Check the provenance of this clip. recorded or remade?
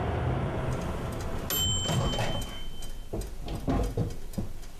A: recorded